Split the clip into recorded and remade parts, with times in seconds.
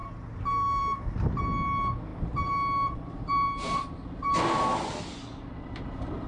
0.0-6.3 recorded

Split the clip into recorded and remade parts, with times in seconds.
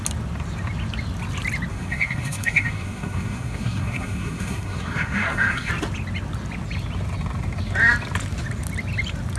0.0-1.7 recorded; 1.7-5.7 remade; 5.7-9.4 recorded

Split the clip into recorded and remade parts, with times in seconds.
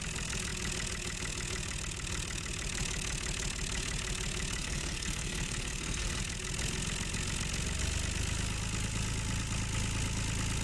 0.0-4.6 recorded; 4.6-6.2 remade; 6.2-10.6 recorded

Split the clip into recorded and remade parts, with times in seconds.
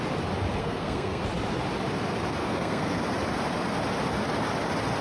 0.0-0.6 recorded; 0.6-1.2 remade; 1.2-2.4 recorded; 2.4-3.0 remade; 3.0-5.0 recorded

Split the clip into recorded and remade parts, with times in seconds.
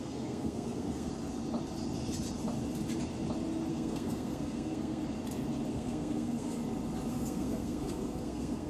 0.0-1.1 remade; 1.1-3.7 recorded; 3.7-5.0 remade; 5.0-5.7 recorded; 5.7-6.6 remade; 6.6-7.1 recorded; 7.1-8.7 remade